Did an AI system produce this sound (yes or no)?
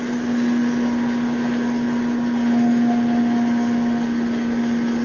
no